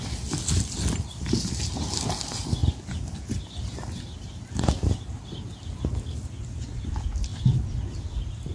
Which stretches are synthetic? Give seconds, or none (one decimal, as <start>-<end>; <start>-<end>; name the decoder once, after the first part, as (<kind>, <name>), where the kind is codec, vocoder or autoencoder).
none

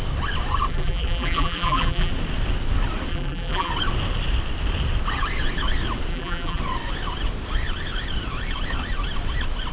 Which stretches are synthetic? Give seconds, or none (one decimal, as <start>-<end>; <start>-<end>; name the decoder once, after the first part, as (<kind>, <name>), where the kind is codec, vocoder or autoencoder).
0.7-2.1 (vocoder, BigVGAN v2); 3.1-3.7; 6.1-6.6

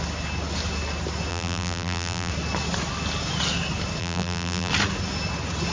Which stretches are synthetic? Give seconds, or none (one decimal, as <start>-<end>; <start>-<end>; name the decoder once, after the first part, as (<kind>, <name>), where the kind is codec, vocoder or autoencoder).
1.3-2.3 (vocoder, BigVGAN v2); 4.0-4.7

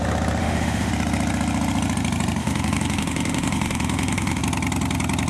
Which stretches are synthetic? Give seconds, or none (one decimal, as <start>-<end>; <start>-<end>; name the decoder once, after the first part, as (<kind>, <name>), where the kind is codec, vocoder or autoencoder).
0.4-0.9 (autoencoder, DAC-VAE); 2.4-4.4

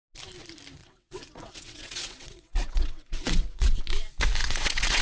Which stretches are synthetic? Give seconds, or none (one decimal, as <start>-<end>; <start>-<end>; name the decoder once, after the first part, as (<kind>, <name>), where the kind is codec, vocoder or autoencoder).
0.8-3.8 (vocoder, WaveNeXt); 4.4-5.0

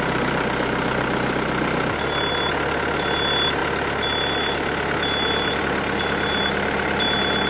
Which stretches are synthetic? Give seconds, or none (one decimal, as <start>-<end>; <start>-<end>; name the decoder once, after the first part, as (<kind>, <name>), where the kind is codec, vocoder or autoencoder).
none

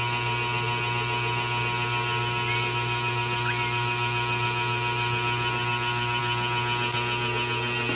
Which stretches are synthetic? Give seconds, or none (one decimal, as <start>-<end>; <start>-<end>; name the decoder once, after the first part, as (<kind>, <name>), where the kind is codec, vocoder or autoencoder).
none